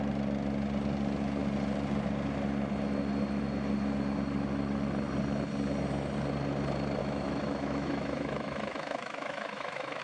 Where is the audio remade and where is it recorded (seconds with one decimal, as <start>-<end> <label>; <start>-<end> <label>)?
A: 0.0-7.0 recorded; 7.0-10.0 remade